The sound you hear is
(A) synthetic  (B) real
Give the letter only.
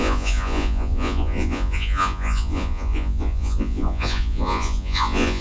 A